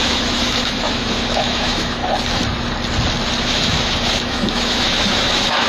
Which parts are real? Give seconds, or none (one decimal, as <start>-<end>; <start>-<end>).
2.0-3.4